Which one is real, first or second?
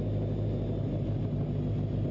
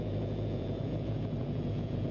first